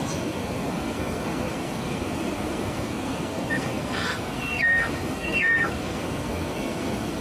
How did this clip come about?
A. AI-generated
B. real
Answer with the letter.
A